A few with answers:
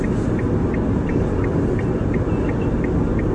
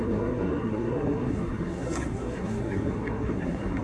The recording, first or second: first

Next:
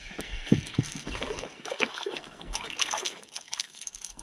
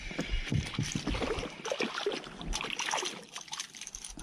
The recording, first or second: second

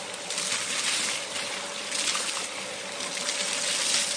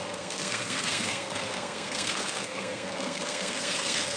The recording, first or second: first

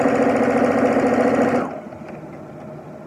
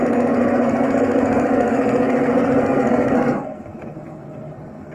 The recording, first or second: first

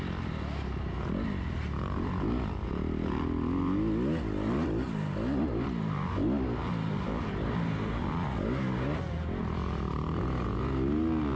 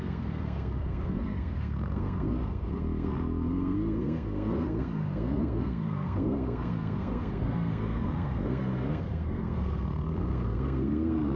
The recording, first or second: first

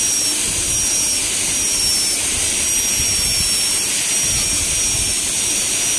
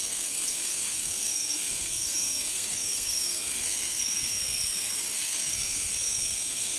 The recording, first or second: first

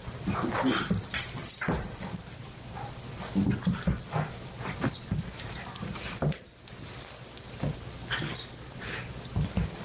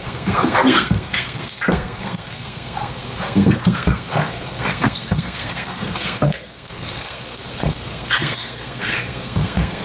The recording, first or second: first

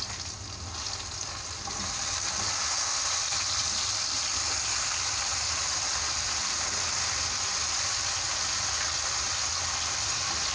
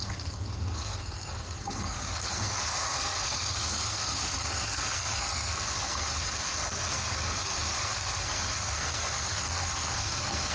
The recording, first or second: first